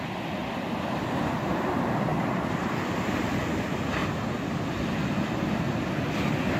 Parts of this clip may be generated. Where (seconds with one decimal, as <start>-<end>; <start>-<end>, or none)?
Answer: 2.1-3.6